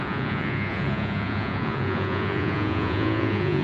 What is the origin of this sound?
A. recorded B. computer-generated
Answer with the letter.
B